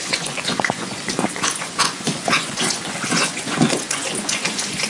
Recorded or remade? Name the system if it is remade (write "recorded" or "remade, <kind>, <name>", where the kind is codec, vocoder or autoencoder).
remade, vocoder, Vocos